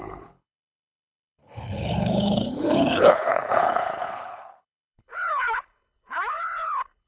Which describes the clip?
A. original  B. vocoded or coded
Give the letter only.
B